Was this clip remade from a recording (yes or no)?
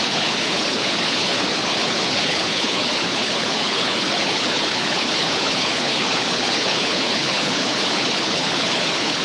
yes